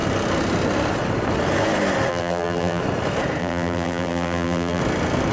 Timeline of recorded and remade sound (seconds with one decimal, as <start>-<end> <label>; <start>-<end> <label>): 0.0-2.1 recorded; 2.1-2.8 remade; 2.8-3.4 recorded; 3.4-4.8 remade; 4.8-5.3 recorded